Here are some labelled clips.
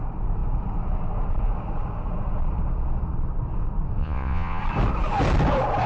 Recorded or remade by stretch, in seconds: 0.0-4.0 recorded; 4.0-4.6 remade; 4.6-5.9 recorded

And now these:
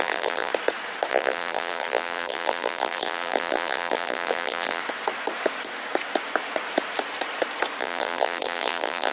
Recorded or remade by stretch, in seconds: 0.0-0.5 remade; 0.5-1.1 recorded; 1.1-4.8 remade; 4.8-7.8 recorded; 7.8-9.1 remade